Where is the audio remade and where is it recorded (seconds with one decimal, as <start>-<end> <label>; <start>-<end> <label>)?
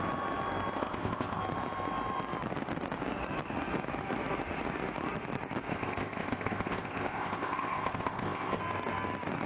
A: 0.0-0.8 recorded; 0.8-1.4 remade; 1.4-5.7 recorded; 5.7-8.6 remade; 8.6-9.5 recorded